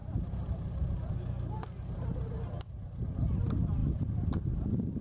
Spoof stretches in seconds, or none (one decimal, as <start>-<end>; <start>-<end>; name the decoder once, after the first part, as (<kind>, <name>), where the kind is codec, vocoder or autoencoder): none